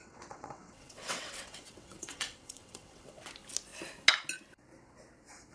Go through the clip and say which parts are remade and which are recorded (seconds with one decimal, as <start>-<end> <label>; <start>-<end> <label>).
0.0-3.3 remade; 3.3-5.5 recorded